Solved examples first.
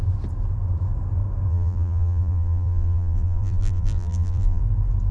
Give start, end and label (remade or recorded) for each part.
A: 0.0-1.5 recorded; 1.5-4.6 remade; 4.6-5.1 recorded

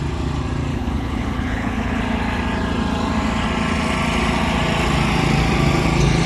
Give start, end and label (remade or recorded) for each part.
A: 0.0-0.7 recorded; 0.7-2.0 remade; 2.0-6.3 recorded

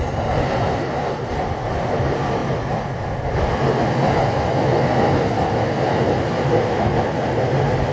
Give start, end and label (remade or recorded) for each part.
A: 0.0-2.4 remade; 2.4-6.0 recorded; 6.0-7.9 remade

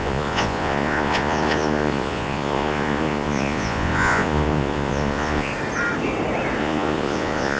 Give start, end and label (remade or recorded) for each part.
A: 0.0-5.5 remade; 5.5-6.6 recorded; 6.6-7.6 remade

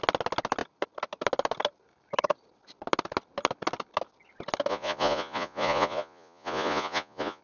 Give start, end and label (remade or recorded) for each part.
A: 0.0-4.7 recorded; 4.7-7.4 remade

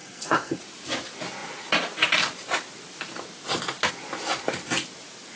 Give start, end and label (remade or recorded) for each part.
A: 0.0-0.6 remade; 0.6-5.3 recorded

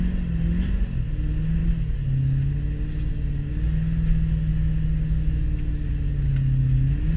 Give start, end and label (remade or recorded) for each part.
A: 0.0-7.2 recorded